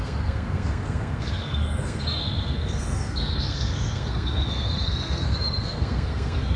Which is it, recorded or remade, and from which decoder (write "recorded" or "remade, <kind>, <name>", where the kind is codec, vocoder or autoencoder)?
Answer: remade, codec, SNAC